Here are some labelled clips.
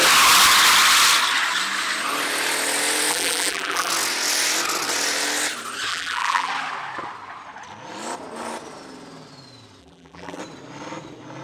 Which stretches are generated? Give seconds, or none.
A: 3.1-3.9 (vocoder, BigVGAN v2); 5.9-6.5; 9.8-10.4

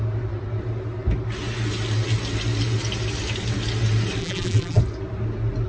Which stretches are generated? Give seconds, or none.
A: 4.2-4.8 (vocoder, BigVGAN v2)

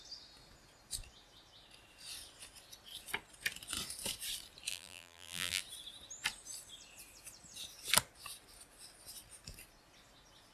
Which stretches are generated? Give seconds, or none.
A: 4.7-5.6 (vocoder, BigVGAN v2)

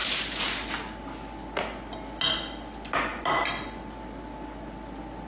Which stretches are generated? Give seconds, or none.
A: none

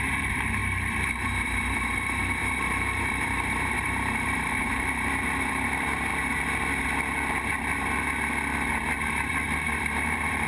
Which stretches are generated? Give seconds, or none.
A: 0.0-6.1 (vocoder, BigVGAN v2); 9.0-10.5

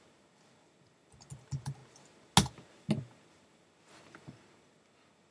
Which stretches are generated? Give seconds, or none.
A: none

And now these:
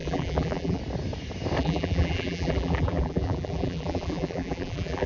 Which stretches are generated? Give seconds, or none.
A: 0.0-0.8 (vocoder, BigVGAN v2); 1.6-5.1